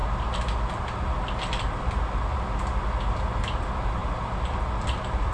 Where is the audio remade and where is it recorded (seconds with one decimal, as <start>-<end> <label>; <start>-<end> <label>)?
0.0-5.3 recorded